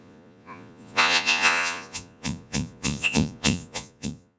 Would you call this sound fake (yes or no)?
yes